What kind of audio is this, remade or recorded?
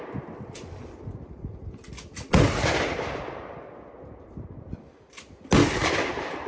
recorded